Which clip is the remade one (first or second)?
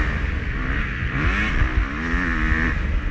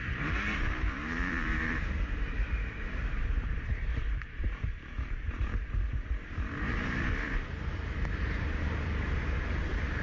second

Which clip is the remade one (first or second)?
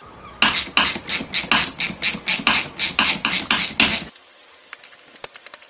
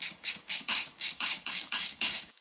second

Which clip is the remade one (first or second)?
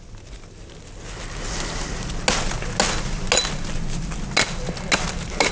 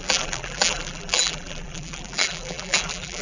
second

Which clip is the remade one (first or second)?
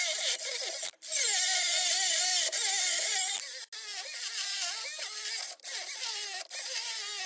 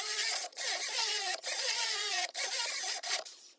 second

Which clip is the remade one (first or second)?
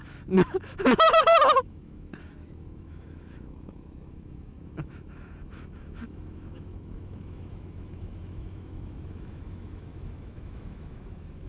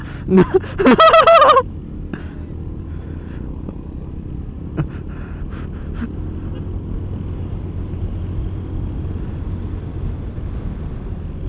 first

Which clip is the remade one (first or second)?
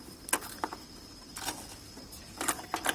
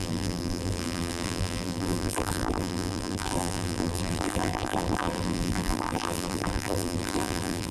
second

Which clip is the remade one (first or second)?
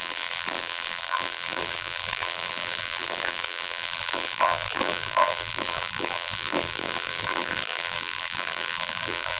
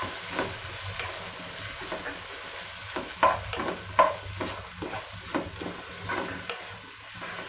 first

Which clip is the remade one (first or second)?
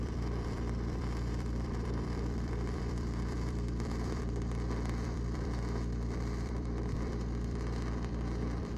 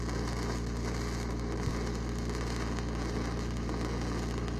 first